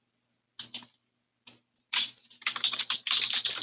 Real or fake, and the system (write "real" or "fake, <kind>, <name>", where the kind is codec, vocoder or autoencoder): real